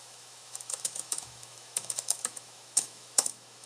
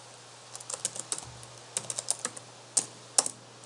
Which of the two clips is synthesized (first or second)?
first